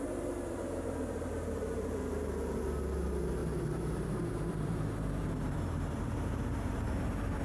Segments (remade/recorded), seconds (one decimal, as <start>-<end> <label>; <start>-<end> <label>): 0.0-2.0 remade; 2.0-3.4 recorded; 3.4-7.4 remade